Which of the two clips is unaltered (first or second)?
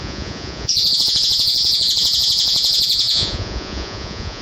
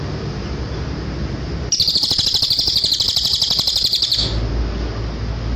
second